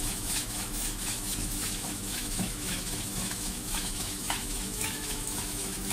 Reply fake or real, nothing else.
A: fake